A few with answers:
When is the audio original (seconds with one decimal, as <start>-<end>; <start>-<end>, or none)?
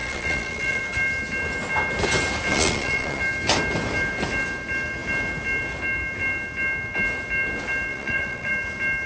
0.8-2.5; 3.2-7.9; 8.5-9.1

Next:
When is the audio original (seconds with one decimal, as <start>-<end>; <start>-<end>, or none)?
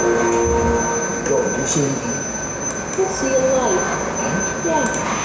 0.0-5.2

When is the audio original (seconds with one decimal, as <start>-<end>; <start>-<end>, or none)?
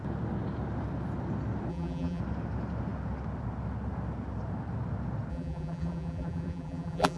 0.0-1.7; 2.2-5.3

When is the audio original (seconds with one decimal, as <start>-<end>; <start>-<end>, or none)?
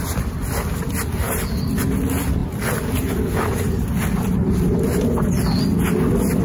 0.0-6.4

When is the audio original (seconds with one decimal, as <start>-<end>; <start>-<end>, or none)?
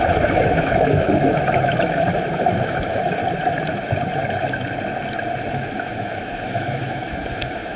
3.2-5.5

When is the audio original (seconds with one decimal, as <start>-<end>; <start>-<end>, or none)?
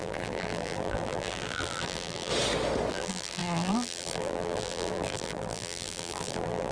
2.3-2.9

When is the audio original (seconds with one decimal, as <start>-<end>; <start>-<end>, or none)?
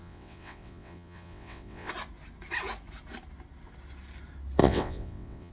1.9-4.6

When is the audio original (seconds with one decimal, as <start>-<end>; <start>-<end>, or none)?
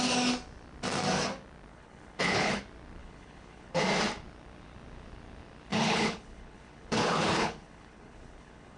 0.0-1.7; 2.6-3.0; 3.8-5.7